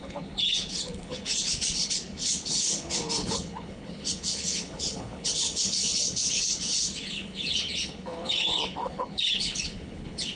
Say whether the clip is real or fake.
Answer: fake